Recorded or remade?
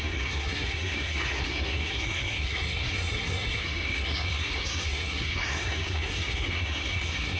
remade